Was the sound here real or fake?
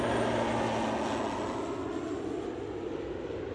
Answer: real